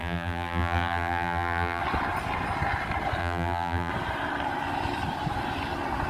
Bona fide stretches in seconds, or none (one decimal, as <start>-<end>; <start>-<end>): 1.8-3.2; 3.9-6.1